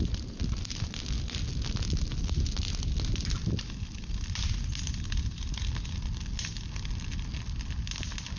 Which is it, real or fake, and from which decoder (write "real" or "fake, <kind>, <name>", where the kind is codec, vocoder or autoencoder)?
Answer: real